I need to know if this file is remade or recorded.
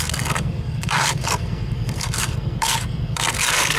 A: remade